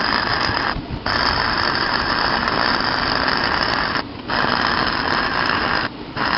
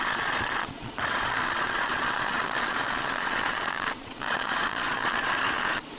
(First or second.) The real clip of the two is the first